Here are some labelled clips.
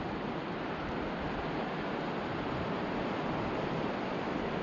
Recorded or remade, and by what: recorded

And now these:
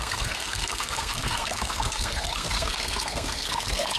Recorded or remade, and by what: remade, codec, SNAC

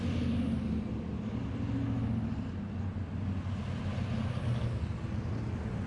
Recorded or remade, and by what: recorded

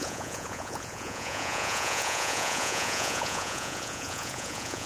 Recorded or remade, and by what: remade, vocoder, Vocos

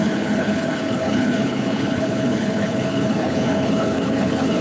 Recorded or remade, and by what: remade, codec, HILCodec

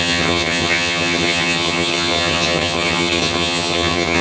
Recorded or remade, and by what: remade, vocoder, HiFi-GAN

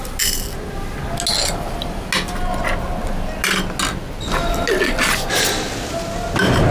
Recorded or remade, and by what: recorded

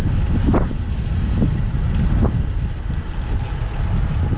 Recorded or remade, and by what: recorded